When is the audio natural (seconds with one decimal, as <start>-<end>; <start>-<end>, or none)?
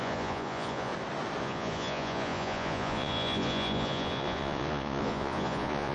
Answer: 0.9-1.4